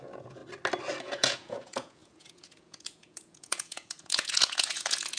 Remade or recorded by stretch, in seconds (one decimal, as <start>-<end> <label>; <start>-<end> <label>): 0.0-0.4 remade; 0.4-1.0 recorded; 1.0-5.2 remade